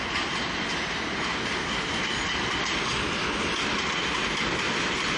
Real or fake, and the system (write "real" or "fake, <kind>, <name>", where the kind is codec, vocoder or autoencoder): real